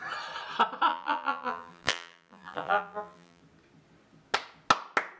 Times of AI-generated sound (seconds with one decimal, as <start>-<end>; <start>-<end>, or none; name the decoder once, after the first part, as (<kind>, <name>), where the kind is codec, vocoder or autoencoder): 0.9-3.4 (vocoder, BigVGAN v2)